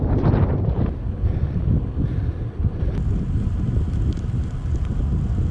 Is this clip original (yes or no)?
yes